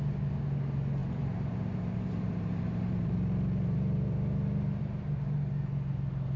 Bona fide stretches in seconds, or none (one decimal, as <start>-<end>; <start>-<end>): 0.0-1.0; 4.8-6.4